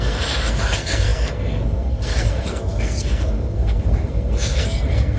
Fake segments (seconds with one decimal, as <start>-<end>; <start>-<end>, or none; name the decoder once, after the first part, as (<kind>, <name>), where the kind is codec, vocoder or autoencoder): 0.0-5.2 (codec, SNAC)